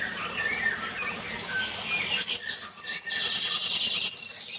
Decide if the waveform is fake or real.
real